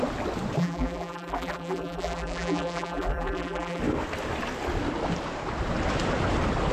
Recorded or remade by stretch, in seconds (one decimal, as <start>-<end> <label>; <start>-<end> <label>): 0.0-0.6 recorded; 0.6-3.8 remade; 3.8-6.7 recorded